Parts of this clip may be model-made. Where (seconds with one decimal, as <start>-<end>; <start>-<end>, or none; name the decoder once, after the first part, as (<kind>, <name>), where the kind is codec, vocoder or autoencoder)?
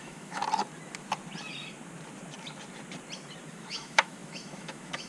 0.0-0.4 (autoencoder, DAC-VAE); 3.5-5.1